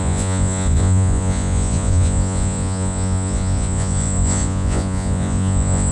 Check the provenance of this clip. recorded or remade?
remade